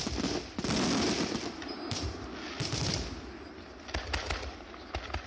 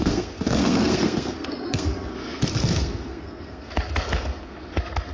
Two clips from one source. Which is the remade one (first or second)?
second